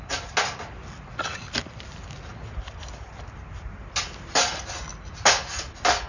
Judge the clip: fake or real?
real